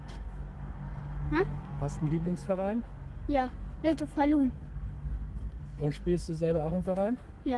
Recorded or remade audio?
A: remade